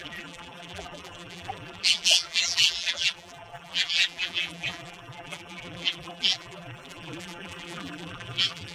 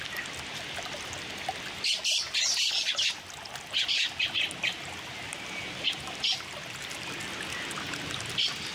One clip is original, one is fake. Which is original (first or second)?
second